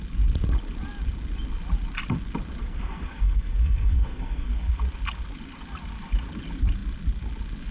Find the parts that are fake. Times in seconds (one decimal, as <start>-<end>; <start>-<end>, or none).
2.6-4.8